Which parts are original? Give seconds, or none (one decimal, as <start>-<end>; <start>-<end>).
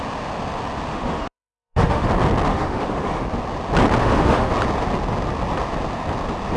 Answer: 0.0-0.9; 2.1-2.5; 3.2-4.0; 4.5-6.6